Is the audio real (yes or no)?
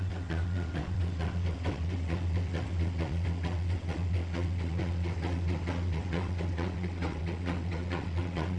no